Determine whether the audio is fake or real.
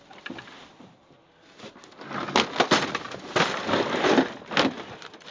real